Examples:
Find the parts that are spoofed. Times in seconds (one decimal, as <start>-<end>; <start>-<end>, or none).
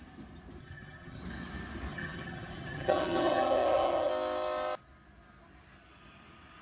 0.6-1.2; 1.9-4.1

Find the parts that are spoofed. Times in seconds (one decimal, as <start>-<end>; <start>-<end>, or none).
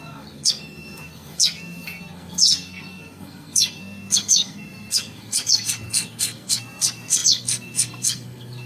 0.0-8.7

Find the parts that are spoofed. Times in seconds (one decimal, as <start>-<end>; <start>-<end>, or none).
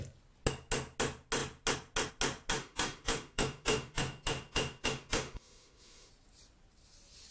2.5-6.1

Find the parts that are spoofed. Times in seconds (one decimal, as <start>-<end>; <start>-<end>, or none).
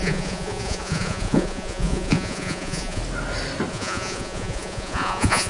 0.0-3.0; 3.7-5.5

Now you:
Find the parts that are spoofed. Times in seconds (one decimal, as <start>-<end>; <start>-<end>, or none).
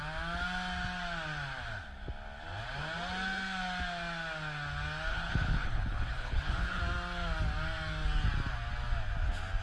5.1-6.8